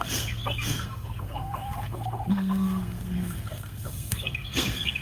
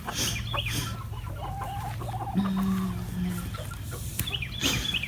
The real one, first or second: second